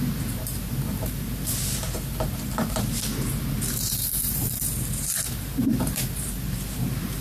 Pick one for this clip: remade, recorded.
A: remade